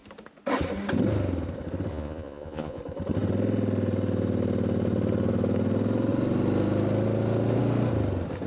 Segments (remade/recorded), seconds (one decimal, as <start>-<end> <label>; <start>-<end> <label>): 0.0-1.9 recorded; 1.9-2.8 remade; 2.8-8.5 recorded